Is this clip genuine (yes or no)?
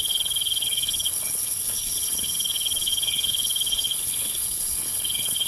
no